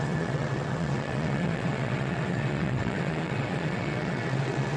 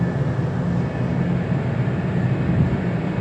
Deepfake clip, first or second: first